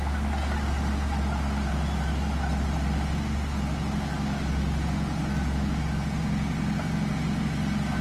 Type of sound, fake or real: real